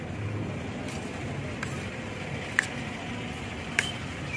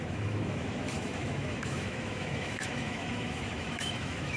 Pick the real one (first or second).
first